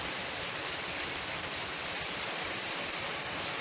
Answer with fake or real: real